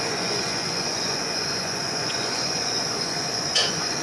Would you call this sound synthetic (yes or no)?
yes